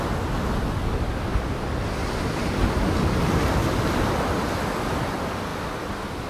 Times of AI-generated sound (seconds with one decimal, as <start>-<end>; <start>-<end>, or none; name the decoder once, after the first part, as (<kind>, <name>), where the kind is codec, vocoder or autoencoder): 5.5-6.3 (vocoder, BigVGAN v2)